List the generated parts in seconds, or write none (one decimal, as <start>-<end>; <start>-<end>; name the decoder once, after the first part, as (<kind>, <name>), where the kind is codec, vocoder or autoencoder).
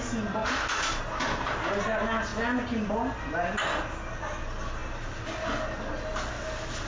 0.4-1.0 (vocoder, BigVGAN v2)